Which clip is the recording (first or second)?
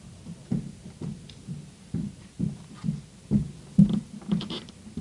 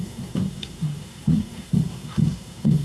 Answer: first